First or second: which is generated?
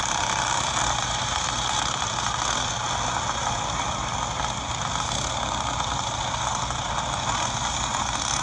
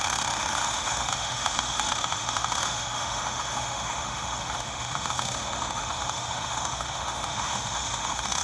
second